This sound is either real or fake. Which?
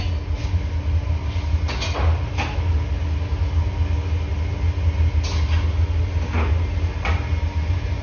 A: real